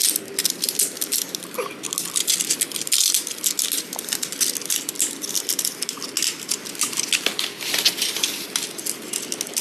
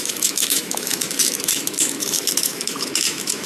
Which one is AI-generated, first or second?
second